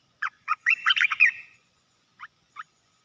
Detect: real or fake fake